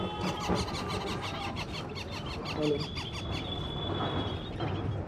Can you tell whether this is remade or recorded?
recorded